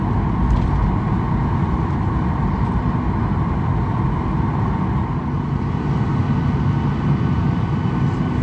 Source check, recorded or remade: recorded